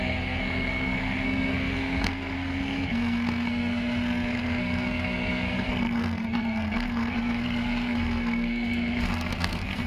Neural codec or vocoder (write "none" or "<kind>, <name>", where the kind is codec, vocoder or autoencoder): codec, SNAC